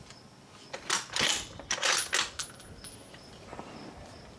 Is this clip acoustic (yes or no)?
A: yes